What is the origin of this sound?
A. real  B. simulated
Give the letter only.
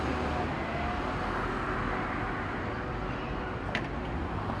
A